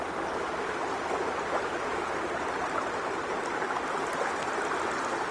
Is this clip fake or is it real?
real